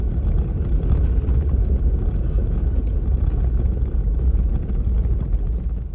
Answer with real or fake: real